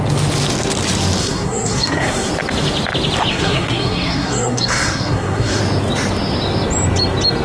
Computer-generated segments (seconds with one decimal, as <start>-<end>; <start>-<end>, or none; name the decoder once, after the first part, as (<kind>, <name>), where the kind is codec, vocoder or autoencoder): 1.2-2.3 (codec, SNAC); 3.3-5.6